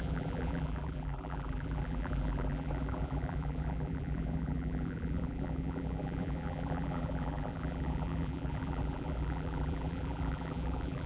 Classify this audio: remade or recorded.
remade